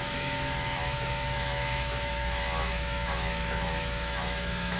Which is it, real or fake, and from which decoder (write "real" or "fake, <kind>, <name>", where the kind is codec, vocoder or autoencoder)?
fake, autoencoder, DAC-VAE